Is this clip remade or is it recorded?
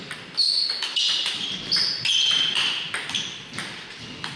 remade